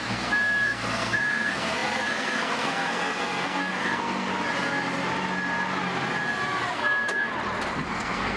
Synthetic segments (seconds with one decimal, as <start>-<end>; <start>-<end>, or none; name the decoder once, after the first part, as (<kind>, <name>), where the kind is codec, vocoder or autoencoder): 0.0-4.3 (codec, SNAC); 6.7-7.3; 7.9-8.4